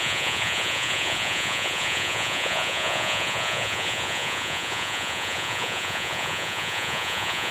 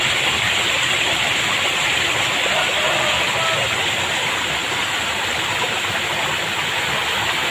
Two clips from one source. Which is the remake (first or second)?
first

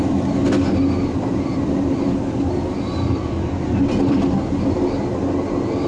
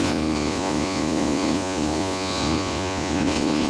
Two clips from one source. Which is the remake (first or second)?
second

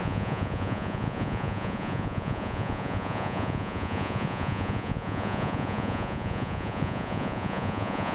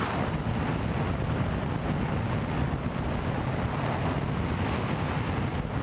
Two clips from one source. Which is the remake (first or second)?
first